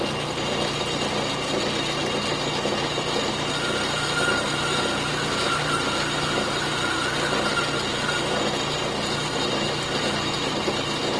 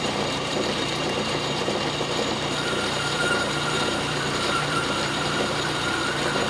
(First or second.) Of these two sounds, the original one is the first